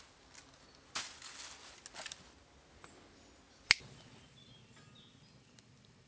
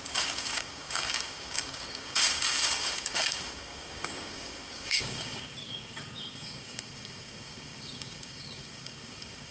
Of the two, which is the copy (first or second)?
second